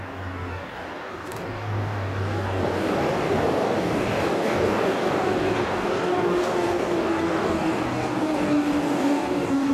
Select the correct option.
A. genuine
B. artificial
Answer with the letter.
B